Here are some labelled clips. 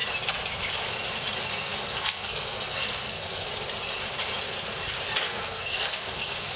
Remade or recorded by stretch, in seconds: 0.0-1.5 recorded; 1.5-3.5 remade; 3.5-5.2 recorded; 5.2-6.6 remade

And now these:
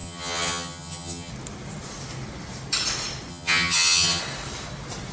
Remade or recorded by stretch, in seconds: 0.0-1.3 remade; 1.3-3.3 recorded; 3.3-4.2 remade; 4.2-5.1 recorded

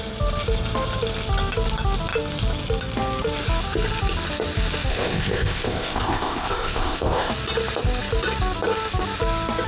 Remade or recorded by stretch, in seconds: 0.0-4.9 recorded; 4.9-7.3 remade; 7.3-9.7 recorded

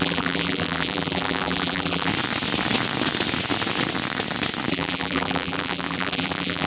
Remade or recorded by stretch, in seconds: 0.0-2.1 remade; 2.1-4.7 recorded; 4.7-6.7 remade

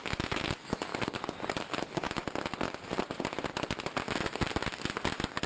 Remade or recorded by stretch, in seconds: 0.0-0.9 remade; 0.9-1.6 recorded; 1.6-2.2 remade; 2.2-5.5 recorded